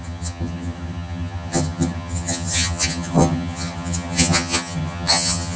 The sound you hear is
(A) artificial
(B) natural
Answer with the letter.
A